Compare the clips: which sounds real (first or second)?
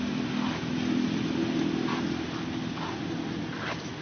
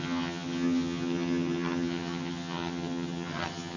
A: first